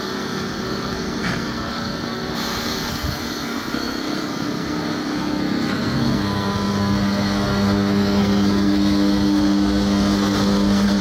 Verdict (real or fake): fake